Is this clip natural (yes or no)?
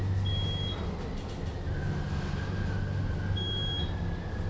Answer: yes